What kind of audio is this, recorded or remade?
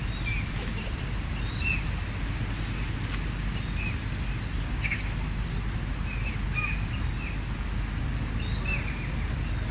recorded